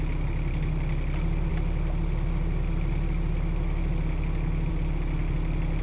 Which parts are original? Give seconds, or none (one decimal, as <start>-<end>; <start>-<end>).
0.0-5.8